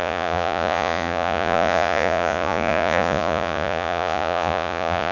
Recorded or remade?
remade